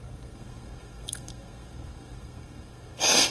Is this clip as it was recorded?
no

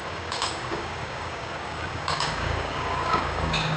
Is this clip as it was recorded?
no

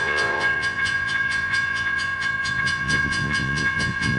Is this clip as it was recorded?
no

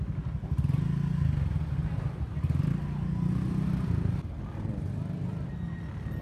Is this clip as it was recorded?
yes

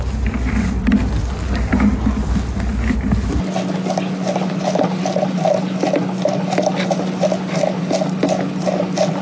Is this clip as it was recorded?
yes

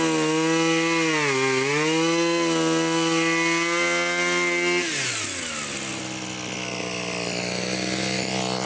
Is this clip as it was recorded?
yes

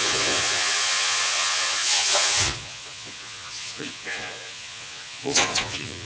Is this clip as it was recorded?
no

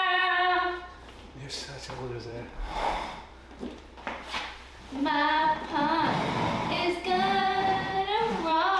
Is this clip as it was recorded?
no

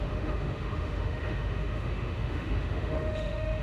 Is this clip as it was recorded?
no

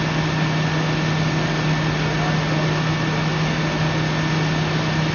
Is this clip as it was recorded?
yes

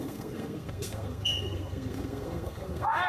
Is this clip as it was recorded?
no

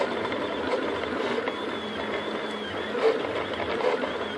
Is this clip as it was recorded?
yes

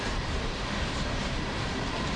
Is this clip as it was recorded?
no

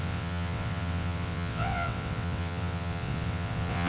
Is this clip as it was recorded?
no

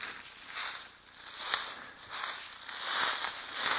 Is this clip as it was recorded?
yes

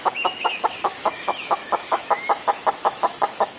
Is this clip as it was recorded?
no